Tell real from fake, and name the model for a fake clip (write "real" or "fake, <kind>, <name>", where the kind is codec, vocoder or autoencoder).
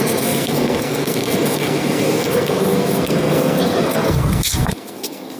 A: fake, codec, SNAC